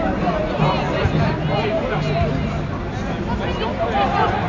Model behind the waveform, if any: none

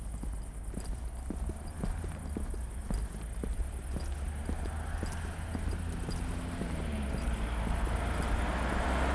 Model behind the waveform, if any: none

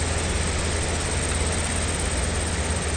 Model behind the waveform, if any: none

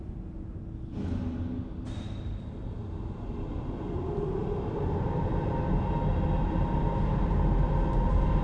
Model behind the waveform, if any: none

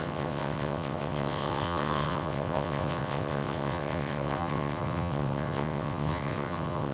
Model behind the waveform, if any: vocoder, WaveNeXt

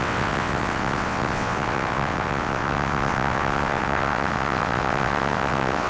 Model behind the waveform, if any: vocoder, WaveNeXt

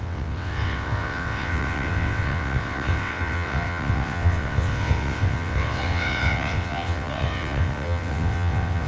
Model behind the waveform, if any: vocoder, WaveNeXt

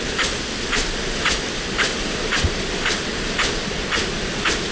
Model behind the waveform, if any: none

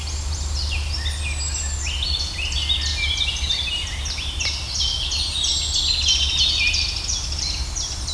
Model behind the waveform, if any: none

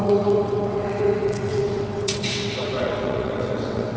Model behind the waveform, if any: vocoder, WaveNeXt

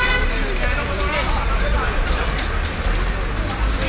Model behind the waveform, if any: none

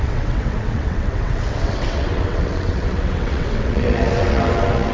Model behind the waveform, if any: vocoder, WaveNeXt